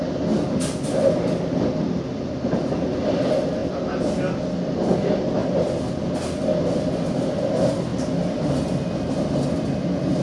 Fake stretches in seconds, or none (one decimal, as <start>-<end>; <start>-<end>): none